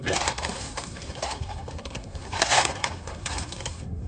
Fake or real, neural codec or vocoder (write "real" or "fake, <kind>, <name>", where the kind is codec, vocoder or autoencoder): fake, codec, SNAC